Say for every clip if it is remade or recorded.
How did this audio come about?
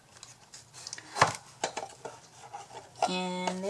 recorded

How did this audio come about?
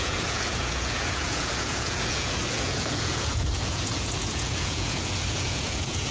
remade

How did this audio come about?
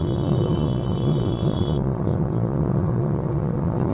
remade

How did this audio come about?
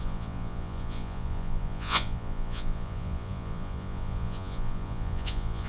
remade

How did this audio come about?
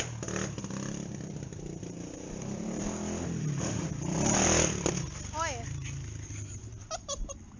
recorded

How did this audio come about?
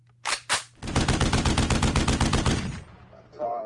recorded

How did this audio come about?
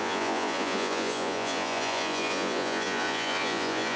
remade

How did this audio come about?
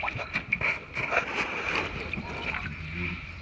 recorded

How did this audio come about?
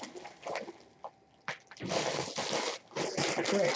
recorded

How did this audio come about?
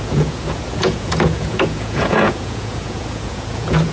remade